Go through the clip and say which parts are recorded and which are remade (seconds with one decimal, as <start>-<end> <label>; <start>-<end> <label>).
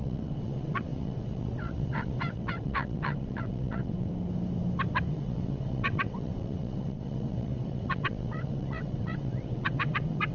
0.0-4.1 remade; 4.1-5.1 recorded; 5.1-10.3 remade